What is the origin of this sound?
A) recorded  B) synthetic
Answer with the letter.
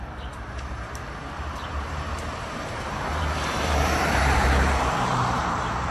B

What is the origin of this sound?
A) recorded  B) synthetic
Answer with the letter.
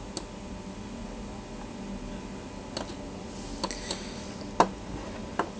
A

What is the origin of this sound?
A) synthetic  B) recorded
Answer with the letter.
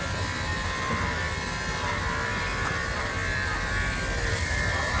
A